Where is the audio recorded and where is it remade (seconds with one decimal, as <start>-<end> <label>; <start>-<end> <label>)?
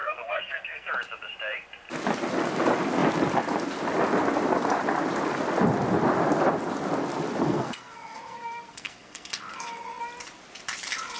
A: 0.0-0.9 remade; 0.9-7.4 recorded; 7.4-10.0 remade; 10.0-11.2 recorded